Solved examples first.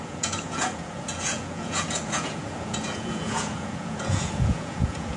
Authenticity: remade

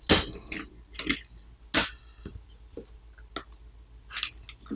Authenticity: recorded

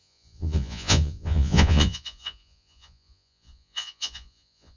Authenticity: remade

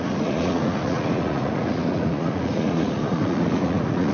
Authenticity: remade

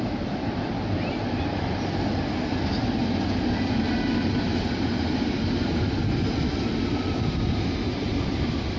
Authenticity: recorded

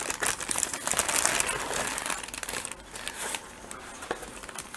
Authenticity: recorded